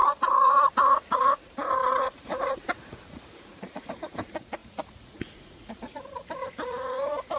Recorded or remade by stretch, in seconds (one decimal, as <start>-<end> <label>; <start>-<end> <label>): 0.0-7.4 remade